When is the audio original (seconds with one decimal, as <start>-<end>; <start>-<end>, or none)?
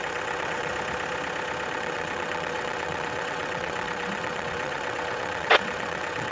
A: 0.7-1.7